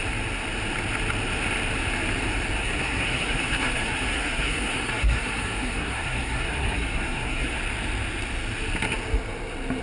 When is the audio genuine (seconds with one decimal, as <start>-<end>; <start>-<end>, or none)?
0.0-2.6; 7.6-9.8